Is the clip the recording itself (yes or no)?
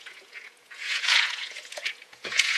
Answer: no